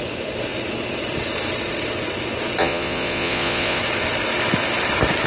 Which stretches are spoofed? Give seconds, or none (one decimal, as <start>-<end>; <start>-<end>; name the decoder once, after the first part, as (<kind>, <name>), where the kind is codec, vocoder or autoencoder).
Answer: 2.6-3.8 (vocoder, Vocos)